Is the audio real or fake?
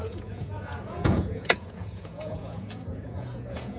fake